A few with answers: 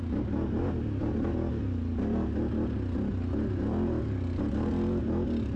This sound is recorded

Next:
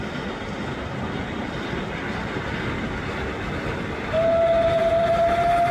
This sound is recorded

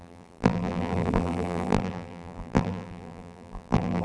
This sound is remade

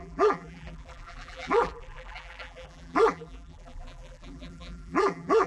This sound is remade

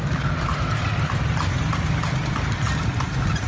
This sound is recorded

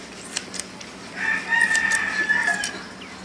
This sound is recorded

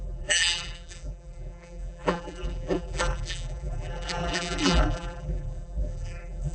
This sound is remade